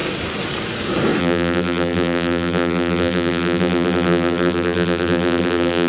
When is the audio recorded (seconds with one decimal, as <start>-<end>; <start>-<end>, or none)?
0.0-1.2